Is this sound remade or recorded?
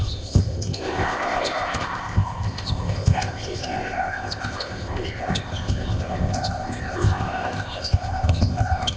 remade